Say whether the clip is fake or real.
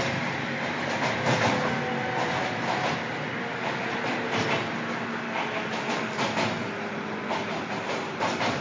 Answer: real